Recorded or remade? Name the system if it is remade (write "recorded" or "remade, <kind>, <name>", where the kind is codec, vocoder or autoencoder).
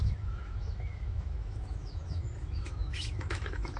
remade, autoencoder, DAC-VAE